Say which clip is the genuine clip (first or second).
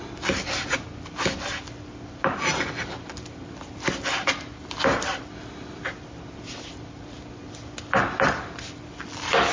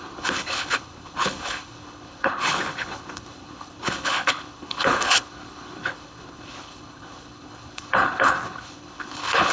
first